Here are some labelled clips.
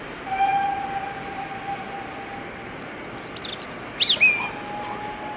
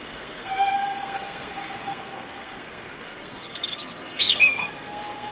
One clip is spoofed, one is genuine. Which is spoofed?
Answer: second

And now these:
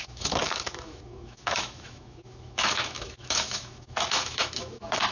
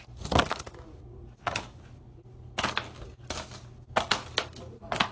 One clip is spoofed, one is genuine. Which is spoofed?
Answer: first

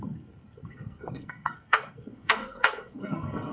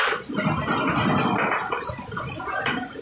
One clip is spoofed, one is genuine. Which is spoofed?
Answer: first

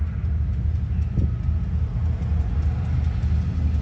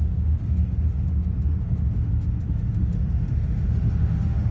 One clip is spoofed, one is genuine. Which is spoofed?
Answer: second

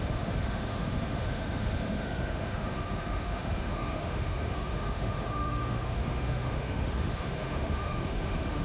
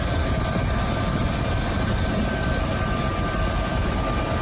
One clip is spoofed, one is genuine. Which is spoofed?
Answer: first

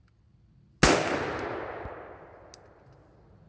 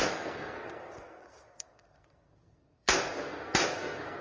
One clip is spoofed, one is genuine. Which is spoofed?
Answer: second